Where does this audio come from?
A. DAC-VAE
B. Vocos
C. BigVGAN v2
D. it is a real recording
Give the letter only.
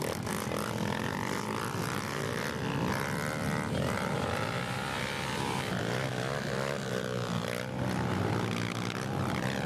D